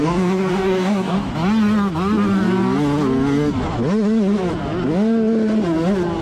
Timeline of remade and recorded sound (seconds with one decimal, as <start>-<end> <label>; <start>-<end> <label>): 0.0-1.3 remade; 1.3-6.2 recorded